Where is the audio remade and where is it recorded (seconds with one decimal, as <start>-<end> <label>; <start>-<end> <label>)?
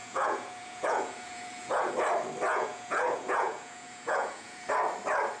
0.0-1.9 remade; 1.9-2.5 recorded; 2.5-4.7 remade; 4.7-5.4 recorded